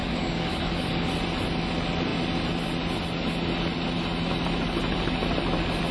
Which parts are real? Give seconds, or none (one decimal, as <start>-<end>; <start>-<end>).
1.1-5.9